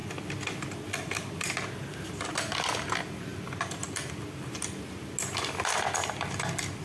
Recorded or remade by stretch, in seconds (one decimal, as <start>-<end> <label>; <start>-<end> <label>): 0.0-6.8 recorded